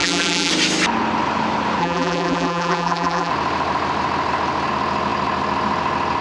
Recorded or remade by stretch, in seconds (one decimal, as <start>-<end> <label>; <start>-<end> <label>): 0.0-0.5 remade; 0.5-1.8 recorded; 1.8-3.3 remade; 3.3-6.2 recorded